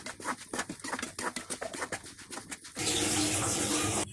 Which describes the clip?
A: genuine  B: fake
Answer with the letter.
A